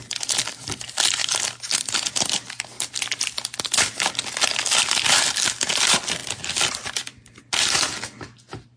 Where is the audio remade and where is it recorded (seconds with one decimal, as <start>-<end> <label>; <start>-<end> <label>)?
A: 0.0-6.2 recorded; 6.2-7.4 remade; 7.4-8.8 recorded